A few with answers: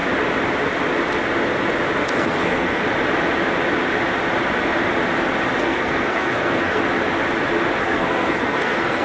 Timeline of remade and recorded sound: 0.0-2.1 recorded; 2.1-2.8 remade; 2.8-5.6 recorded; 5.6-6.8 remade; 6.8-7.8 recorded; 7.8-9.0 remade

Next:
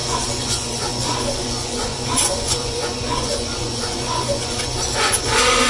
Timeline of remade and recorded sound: 0.0-5.7 remade

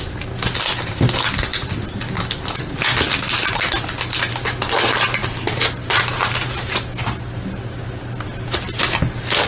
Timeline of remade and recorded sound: 0.0-5.2 recorded; 5.2-7.6 remade; 7.6-9.5 recorded

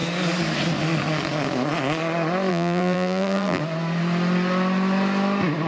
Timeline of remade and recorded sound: 0.0-2.5 recorded; 2.5-3.6 remade; 3.6-5.7 recorded

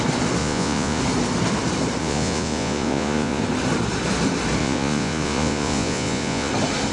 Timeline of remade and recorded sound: 0.0-0.4 recorded; 0.4-1.0 remade; 1.0-2.0 recorded; 2.0-3.4 remade; 3.4-4.6 recorded; 4.6-6.5 remade; 6.5-6.9 recorded

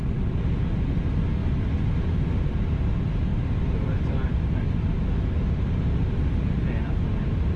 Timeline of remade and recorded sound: 0.0-3.3 recorded; 3.3-4.7 remade; 4.7-7.6 recorded

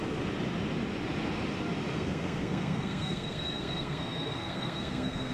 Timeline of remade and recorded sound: 0.0-1.9 recorded; 1.9-5.3 remade

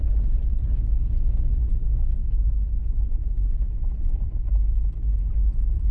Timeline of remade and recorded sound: 0.0-5.9 recorded